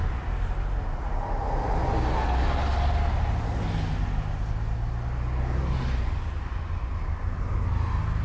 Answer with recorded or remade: recorded